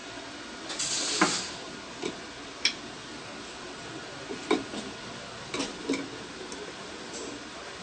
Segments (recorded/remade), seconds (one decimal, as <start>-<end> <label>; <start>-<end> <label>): 0.0-7.8 recorded